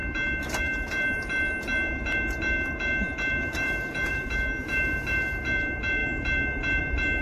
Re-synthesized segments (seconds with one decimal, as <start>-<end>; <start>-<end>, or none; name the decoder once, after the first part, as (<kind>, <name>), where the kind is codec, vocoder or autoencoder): 0.0-7.2 (vocoder, BigVGAN v2)